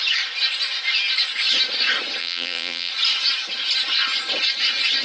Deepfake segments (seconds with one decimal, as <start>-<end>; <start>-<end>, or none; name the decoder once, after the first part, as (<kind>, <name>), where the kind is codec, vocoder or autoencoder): 2.2-2.9 (vocoder, BigVGAN v2)